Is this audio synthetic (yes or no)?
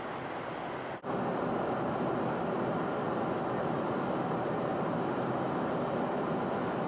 no